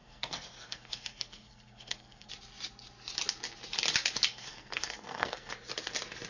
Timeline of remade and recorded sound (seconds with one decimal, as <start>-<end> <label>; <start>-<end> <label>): 0.0-2.3 remade; 2.3-4.3 recorded; 4.3-5.5 remade; 5.5-6.3 recorded